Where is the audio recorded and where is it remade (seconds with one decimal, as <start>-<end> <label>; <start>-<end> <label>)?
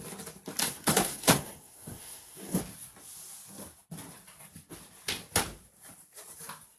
0.0-0.6 recorded; 0.6-2.6 remade; 2.6-6.8 recorded